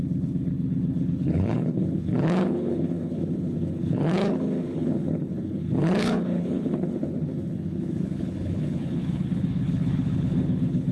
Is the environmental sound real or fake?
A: fake